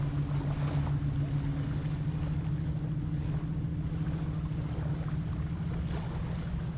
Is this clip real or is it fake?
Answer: real